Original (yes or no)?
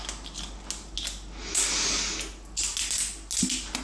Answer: yes